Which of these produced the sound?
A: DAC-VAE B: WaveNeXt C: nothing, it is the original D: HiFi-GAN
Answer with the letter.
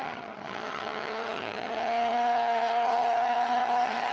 D